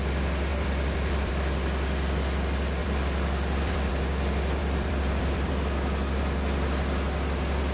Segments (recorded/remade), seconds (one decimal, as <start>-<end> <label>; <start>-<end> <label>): 0.0-0.5 recorded; 0.5-1.3 remade; 1.3-2.8 recorded; 2.8-3.9 remade; 3.9-4.6 recorded; 4.6-5.5 remade; 5.5-7.7 recorded